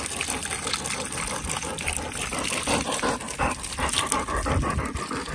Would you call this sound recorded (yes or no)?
yes